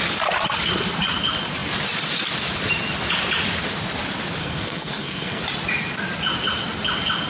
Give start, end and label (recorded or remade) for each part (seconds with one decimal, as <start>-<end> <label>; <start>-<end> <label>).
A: 0.0-4.4 recorded; 4.4-5.4 remade; 5.4-7.3 recorded